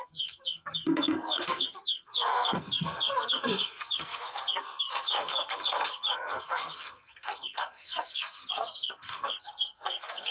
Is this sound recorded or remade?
remade